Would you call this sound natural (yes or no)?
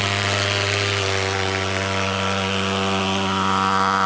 yes